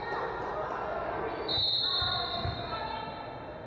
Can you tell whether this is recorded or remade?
recorded